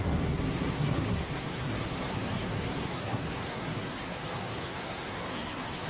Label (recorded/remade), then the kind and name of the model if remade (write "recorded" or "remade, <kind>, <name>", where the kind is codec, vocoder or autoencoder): remade, codec, SNAC